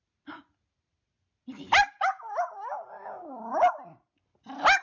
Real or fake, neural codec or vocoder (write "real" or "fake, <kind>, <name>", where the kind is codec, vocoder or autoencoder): real